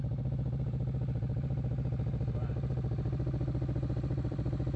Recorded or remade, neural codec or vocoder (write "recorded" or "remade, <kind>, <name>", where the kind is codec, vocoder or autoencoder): remade, vocoder, BigVGAN v2